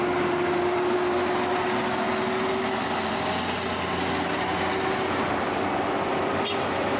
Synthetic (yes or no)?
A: no